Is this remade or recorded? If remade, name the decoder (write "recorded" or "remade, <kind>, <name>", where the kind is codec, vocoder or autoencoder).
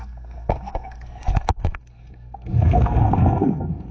remade, codec, SNAC